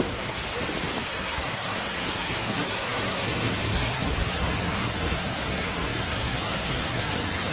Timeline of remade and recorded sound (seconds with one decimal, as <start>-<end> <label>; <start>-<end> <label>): 0.0-0.4 remade; 0.4-1.1 recorded; 1.1-7.5 remade